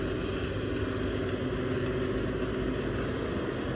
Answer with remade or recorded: recorded